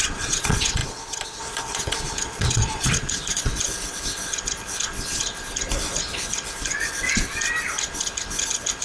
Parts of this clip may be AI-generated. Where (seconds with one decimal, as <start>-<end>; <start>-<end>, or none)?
0.0-3.5